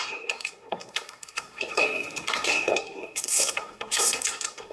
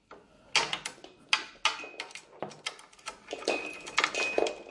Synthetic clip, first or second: first